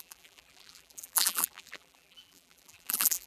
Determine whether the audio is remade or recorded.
remade